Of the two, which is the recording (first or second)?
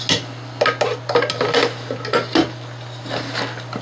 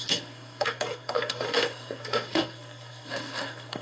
first